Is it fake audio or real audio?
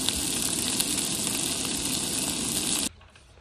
real